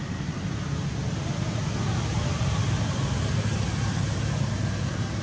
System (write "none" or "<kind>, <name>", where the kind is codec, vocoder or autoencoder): none